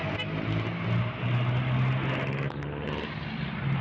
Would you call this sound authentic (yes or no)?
yes